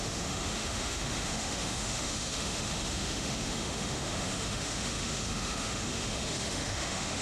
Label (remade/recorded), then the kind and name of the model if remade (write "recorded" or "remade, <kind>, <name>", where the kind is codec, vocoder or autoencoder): remade, autoencoder, DAC-VAE